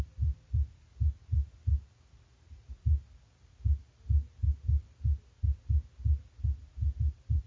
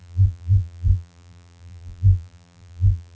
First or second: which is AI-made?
second